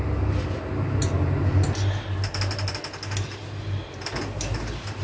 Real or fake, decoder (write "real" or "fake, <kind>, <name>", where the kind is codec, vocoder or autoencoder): real